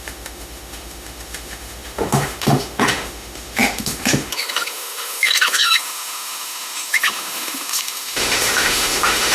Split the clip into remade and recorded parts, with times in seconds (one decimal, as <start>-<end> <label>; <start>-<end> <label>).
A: 0.0-9.3 remade